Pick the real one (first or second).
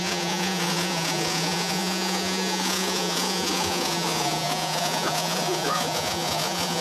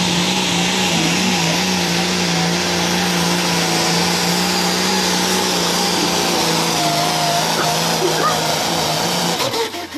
second